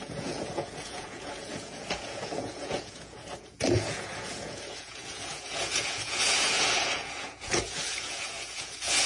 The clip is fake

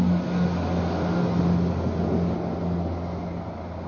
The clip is real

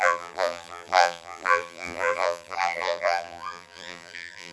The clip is fake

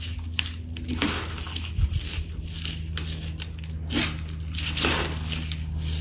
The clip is real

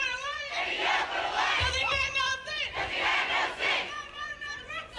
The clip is fake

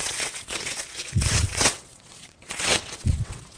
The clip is fake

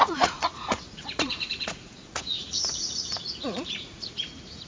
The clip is fake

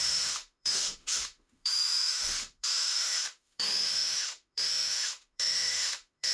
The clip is fake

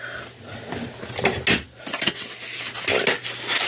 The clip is real